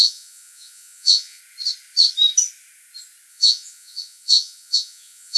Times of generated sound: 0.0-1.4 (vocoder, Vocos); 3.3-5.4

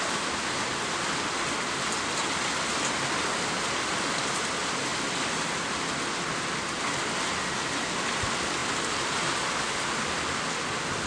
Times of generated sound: none

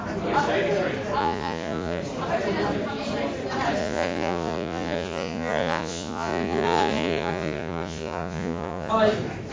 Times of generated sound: 1.2-2.0 (vocoder, Vocos); 3.8-8.9